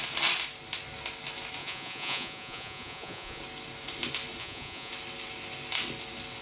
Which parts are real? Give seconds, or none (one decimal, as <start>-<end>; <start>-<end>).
0.0-1.6; 3.4-4.4; 4.9-6.4